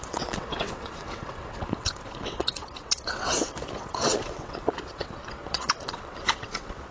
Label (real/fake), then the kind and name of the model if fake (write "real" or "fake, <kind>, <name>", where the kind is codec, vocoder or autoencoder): fake, vocoder, WaveNeXt